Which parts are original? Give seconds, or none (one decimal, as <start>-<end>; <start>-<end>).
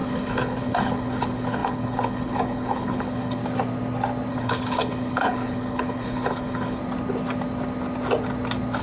3.4-4.3; 6.8-8.8